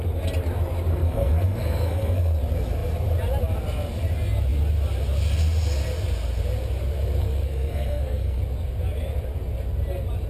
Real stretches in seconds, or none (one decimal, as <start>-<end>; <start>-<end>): 0.0-0.9; 2.4-7.2; 8.4-10.3